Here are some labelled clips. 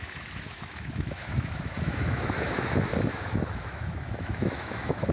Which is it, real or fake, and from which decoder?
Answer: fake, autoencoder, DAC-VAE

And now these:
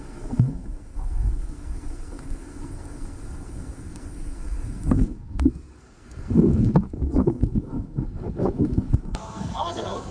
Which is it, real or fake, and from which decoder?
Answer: fake, codec, SNAC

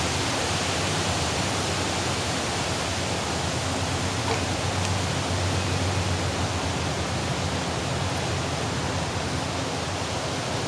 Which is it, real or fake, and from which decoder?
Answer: real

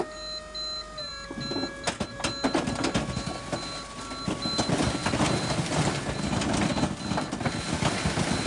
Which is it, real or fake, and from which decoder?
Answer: real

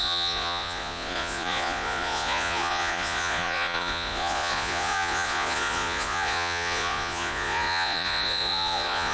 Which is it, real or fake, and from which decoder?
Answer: fake, vocoder, Vocos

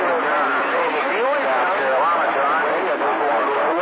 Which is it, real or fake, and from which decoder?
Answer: real